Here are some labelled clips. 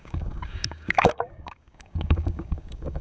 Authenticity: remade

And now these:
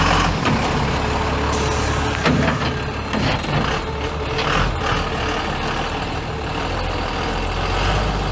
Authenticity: recorded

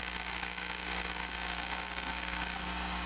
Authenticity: remade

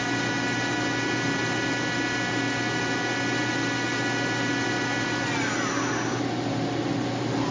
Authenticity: recorded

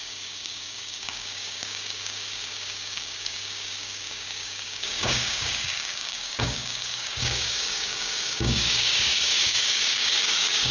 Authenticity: remade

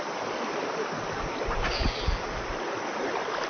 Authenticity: recorded